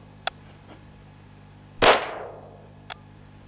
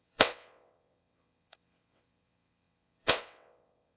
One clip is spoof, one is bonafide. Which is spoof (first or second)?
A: second